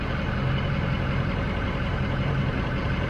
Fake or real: fake